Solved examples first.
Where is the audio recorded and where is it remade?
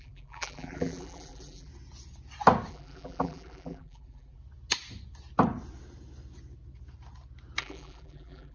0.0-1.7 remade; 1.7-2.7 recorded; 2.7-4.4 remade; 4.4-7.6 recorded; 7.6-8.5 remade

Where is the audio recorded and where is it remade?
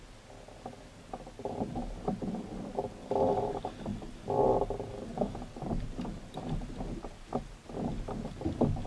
0.0-8.9 recorded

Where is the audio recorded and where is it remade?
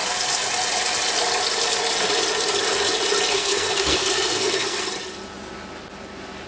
0.0-3.3 recorded; 3.3-4.9 remade; 4.9-6.5 recorded